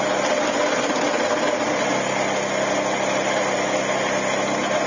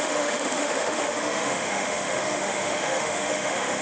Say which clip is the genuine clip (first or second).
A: first